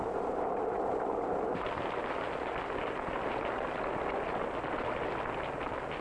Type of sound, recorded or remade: recorded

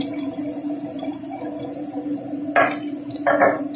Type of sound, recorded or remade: recorded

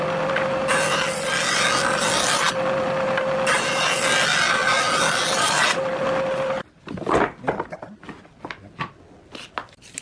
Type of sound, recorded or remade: recorded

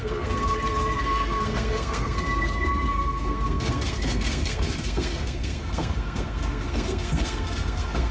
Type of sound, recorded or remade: remade